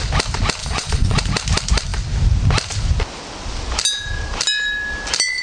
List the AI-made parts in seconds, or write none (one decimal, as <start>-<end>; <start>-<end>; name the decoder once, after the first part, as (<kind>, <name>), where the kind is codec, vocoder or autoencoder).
0.6-1.2 (vocoder, Vocos)

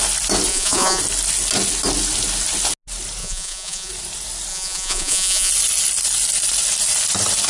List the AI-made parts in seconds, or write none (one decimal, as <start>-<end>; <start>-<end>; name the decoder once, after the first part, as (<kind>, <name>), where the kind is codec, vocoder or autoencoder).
0.5-1.0 (vocoder, Vocos); 3.2-3.9; 4.5-5.5

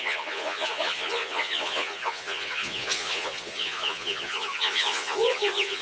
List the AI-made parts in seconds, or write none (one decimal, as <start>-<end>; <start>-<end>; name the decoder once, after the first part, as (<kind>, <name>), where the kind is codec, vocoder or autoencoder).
0.0-5.8 (vocoder, Vocos)

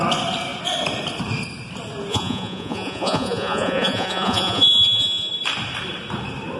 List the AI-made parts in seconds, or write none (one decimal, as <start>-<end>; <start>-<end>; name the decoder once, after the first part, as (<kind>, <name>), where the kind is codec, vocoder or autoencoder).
2.1-5.3 (vocoder, Vocos)